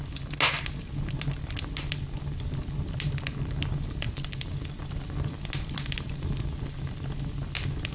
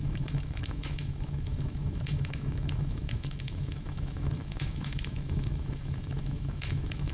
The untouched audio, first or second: first